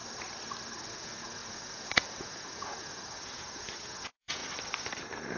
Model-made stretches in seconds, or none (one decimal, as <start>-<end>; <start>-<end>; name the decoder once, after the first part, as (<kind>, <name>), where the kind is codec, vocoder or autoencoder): 0.9-4.4 (vocoder, Vocos)